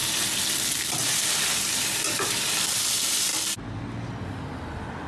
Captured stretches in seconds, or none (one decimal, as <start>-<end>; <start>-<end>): 0.0-0.8; 3.3-4.2